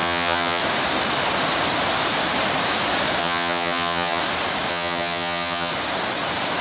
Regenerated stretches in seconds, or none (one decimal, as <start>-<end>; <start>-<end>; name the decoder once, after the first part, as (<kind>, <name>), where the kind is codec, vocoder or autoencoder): 0.0-0.6 (vocoder, HiFi-GAN); 3.2-4.2; 4.7-5.7